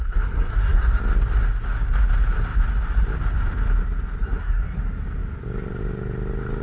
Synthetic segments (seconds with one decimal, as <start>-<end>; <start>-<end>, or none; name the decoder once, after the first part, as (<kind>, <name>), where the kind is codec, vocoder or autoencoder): 0.0-1.0 (codec, SNAC); 4.2-4.8